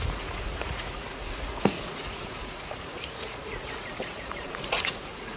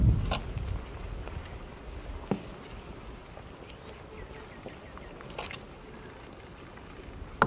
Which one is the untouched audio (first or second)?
second